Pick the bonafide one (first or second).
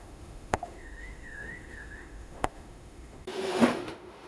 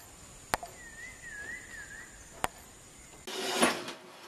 second